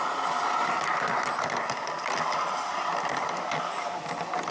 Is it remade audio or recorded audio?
recorded